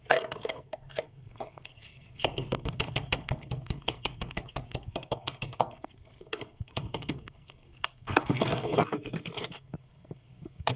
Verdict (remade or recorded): remade